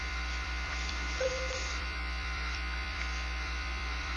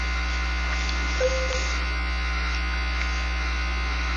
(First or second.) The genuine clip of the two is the second